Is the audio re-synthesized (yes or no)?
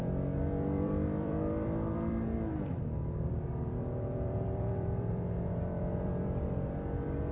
yes